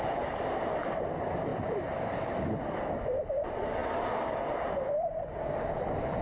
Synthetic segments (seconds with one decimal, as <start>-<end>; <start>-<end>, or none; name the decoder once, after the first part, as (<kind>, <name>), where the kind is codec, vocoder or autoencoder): none